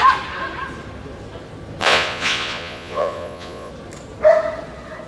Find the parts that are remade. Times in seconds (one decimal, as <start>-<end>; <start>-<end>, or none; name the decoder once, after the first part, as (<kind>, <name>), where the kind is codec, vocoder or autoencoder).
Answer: 1.8-3.7 (vocoder, Vocos)